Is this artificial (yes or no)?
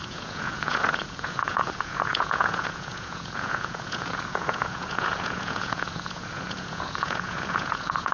yes